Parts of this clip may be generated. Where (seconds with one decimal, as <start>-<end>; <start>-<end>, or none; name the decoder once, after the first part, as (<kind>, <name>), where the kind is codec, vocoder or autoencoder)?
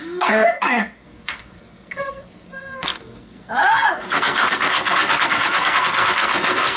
0.0-6.8 (codec, SNAC)